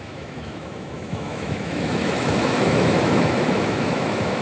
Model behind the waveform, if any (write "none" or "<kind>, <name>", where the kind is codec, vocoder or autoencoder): autoencoder, DAC-VAE